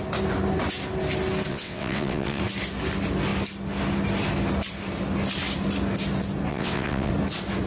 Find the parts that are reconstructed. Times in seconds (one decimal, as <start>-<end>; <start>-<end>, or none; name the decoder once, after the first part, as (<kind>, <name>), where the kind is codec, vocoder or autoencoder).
1.5-2.4 (vocoder, WaveNeXt); 6.5-7.1